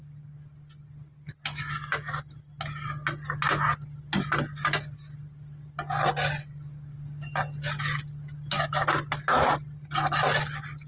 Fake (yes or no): no